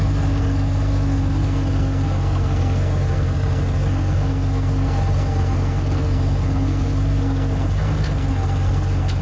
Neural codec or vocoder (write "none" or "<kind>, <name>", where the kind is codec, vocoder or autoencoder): codec, SNAC